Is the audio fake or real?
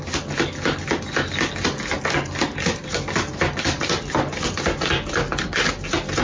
real